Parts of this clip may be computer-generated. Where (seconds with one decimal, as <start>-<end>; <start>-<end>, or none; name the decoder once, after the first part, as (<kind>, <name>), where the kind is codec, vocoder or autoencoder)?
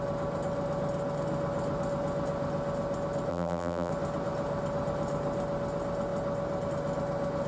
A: 3.3-3.9 (vocoder, BigVGAN v2)